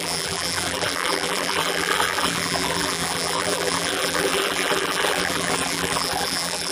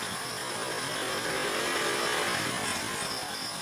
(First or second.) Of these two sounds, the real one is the second